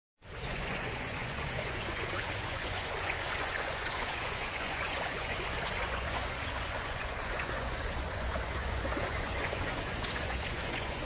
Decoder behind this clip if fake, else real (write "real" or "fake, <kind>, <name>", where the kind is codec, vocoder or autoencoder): fake, vocoder, Vocos